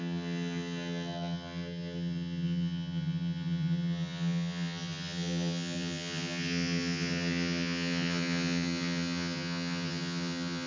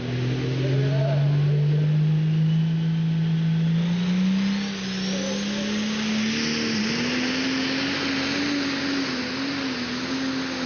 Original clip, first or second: second